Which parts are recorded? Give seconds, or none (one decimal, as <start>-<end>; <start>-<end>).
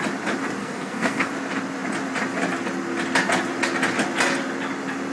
0.0-0.6; 1.3-5.1